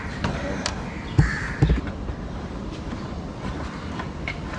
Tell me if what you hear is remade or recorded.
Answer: recorded